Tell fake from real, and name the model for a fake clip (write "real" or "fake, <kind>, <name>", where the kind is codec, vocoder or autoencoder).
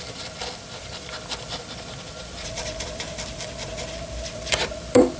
fake, vocoder, BigVGAN v2